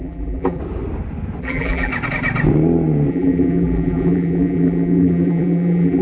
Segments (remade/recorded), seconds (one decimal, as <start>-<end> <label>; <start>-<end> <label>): 0.0-0.6 remade; 0.6-1.4 recorded; 1.4-1.9 remade; 1.9-3.1 recorded; 3.1-6.0 remade

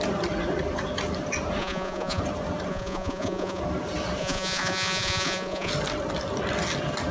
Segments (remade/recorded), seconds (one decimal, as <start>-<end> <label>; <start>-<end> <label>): 0.0-1.6 recorded; 1.6-2.2 remade; 2.2-2.7 recorded; 2.7-3.6 remade; 3.6-4.2 recorded; 4.2-5.7 remade; 5.7-7.1 recorded

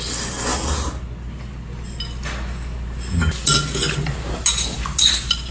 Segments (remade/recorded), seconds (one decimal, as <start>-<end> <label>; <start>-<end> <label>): 0.0-5.5 recorded

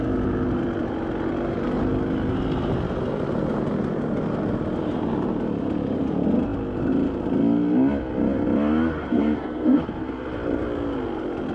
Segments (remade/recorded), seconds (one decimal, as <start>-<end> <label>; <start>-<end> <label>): 0.0-9.1 recorded; 9.1-9.8 remade; 9.8-11.5 recorded

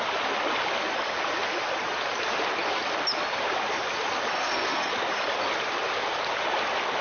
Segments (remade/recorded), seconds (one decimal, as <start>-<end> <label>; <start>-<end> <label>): 0.0-4.3 recorded; 4.3-4.9 remade; 4.9-7.0 recorded

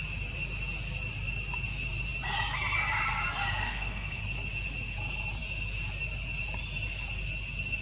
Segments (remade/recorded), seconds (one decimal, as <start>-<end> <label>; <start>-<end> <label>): 0.0-3.6 recorded; 3.6-4.2 remade; 4.2-7.8 recorded

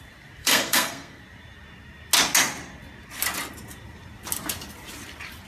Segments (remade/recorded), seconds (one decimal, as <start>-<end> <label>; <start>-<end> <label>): 0.0-0.4 recorded; 0.4-1.2 remade; 1.2-5.5 recorded